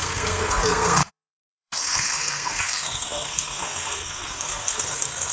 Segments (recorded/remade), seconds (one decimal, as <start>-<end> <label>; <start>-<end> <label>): 0.0-5.3 remade